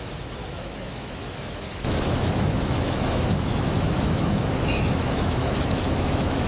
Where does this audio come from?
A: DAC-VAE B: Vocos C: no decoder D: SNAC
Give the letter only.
A